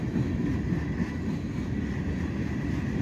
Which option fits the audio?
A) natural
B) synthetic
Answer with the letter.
A